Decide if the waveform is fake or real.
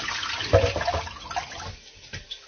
real